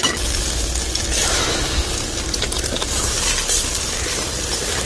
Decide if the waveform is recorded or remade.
recorded